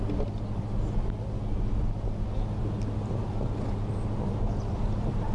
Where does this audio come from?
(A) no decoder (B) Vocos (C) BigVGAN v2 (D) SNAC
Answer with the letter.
A